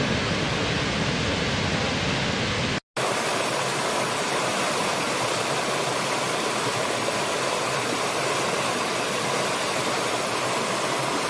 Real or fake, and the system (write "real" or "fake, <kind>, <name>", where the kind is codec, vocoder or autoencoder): real